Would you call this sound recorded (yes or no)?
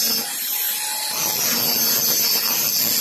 yes